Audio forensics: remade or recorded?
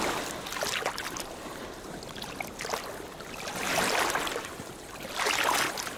recorded